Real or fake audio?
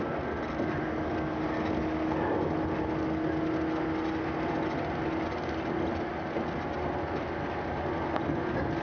real